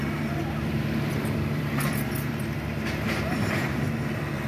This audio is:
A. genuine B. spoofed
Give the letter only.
B